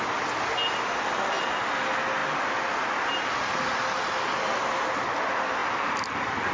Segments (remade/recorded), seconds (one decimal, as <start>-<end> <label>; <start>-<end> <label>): 0.0-2.2 recorded; 2.2-3.2 remade; 3.2-5.6 recorded; 5.6-6.5 remade